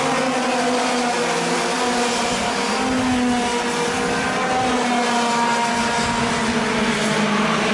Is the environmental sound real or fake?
real